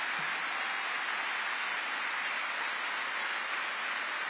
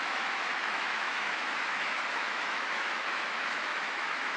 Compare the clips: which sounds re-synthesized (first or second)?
second